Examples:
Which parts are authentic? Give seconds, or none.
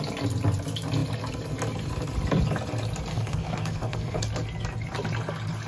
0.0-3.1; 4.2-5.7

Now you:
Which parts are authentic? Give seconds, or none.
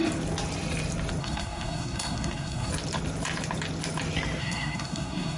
0.0-1.2; 2.7-4.4